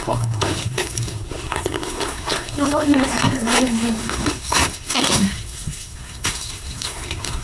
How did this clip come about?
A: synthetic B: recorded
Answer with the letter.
A